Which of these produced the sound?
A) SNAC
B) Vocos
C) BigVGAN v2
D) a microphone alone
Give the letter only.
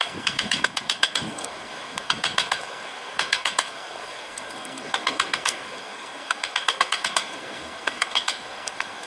A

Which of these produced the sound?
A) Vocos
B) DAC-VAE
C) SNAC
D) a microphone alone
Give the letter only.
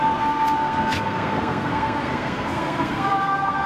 C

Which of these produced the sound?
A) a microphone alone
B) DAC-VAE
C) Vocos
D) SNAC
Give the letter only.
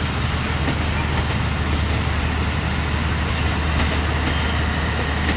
A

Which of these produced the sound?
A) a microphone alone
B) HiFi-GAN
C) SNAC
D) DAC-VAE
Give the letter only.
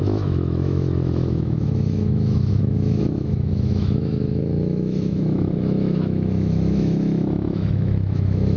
D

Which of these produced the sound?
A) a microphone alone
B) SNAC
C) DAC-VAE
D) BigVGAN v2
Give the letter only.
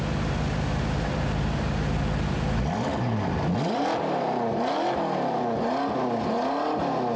A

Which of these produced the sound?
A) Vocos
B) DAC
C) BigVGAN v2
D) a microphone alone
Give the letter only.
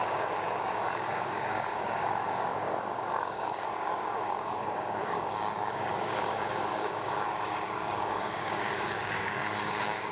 B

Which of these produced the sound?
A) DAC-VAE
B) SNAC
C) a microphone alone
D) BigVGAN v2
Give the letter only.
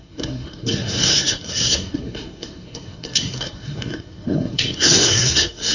B